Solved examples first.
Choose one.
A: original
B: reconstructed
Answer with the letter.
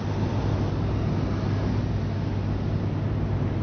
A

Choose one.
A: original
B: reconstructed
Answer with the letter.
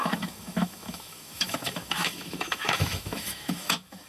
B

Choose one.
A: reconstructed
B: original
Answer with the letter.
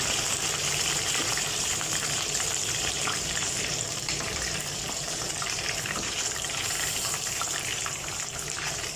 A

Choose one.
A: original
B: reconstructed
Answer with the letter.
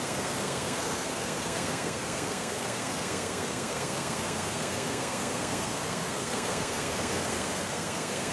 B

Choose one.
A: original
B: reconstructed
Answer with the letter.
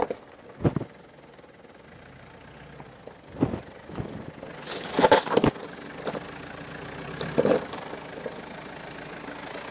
A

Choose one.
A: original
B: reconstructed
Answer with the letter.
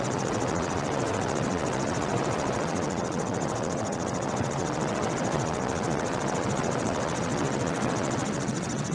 B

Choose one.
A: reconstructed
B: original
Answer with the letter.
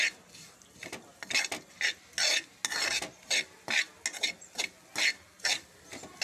B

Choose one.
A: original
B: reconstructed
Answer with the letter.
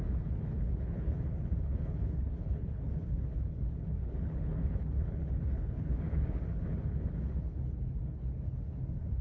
B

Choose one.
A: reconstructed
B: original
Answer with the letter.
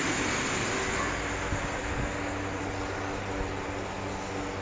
B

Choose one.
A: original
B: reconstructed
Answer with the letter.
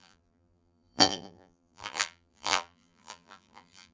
B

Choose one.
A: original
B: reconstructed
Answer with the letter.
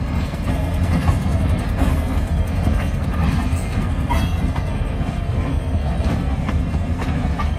B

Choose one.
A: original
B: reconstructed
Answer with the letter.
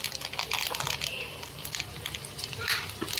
A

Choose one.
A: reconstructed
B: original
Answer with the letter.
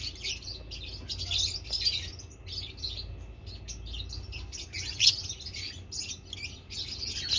B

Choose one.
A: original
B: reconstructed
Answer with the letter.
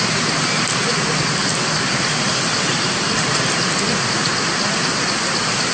A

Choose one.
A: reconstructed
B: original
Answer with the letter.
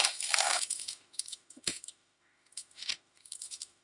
A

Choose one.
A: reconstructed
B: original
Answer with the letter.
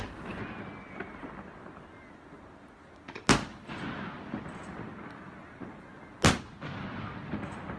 B